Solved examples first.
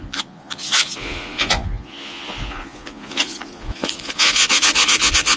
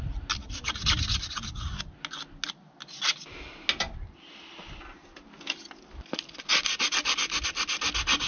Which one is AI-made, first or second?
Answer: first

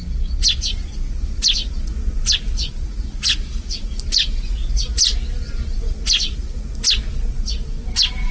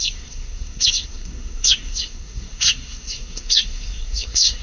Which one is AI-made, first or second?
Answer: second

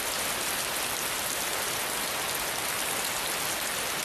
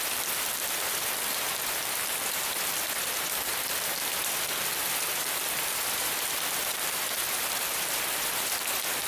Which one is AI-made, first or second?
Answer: second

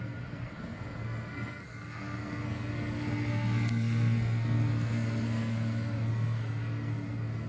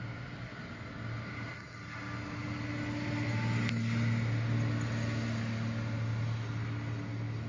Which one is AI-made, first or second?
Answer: first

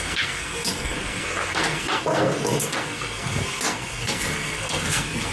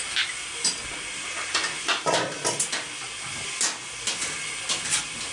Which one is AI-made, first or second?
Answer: first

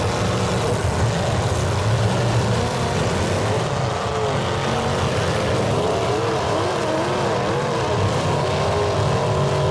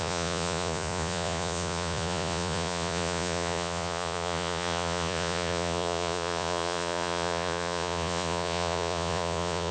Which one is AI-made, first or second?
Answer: second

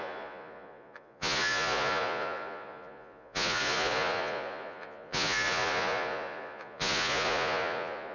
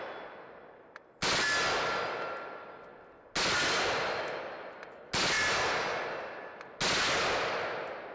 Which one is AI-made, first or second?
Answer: first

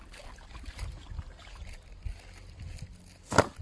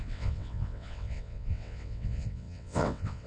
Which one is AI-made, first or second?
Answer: second